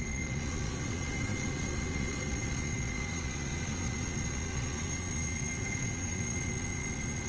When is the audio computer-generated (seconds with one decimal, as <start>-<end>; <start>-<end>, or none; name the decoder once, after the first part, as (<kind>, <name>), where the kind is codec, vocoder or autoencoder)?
0.0-7.3 (vocoder, Vocos)